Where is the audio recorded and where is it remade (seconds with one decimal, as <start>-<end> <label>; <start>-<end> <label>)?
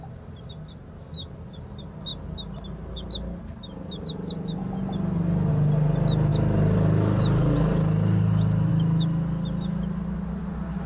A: 0.0-10.9 recorded